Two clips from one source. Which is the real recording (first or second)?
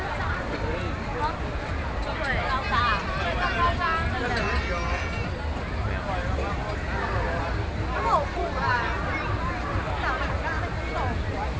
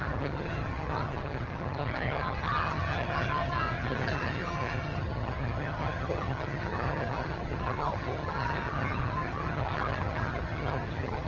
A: first